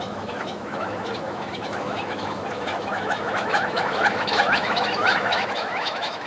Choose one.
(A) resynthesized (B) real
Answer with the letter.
A